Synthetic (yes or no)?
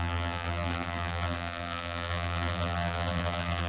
yes